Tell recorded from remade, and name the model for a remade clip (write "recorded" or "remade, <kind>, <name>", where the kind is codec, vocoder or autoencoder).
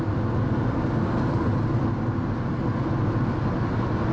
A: recorded